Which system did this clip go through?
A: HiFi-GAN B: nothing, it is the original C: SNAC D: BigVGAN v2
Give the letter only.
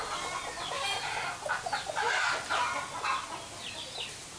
B